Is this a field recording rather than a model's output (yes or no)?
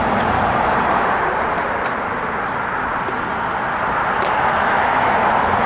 yes